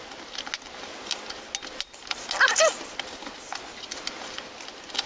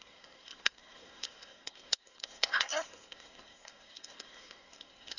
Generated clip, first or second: second